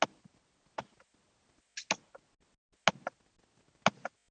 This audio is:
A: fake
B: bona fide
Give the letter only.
B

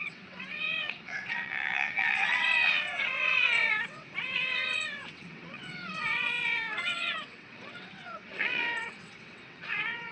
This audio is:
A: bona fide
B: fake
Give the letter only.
B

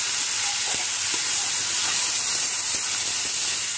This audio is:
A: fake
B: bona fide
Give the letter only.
B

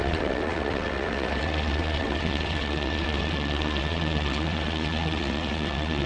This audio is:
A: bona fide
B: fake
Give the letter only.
B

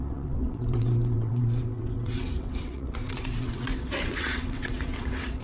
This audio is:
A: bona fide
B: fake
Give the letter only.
B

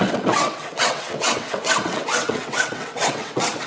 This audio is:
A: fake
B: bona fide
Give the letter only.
A